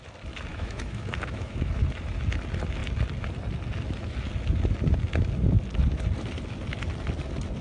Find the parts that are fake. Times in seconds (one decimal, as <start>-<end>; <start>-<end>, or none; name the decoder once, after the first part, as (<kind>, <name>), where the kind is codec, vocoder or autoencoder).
0.5-1.8 (autoencoder, DAC-VAE)